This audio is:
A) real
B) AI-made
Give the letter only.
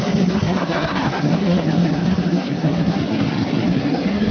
B